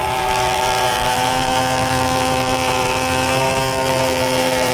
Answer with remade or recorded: remade